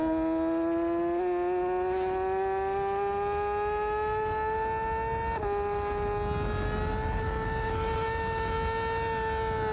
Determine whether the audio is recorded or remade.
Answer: recorded